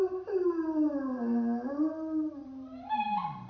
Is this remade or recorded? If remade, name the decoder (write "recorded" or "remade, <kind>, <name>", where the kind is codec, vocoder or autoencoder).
remade, vocoder, BigVGAN v2